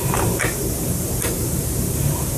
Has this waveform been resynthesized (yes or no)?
yes